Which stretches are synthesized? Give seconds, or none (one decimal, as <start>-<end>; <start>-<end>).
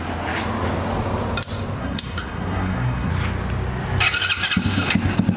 1.8-3.1